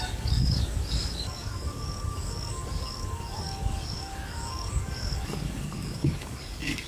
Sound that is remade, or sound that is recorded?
remade